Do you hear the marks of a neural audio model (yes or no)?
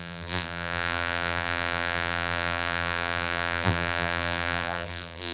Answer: yes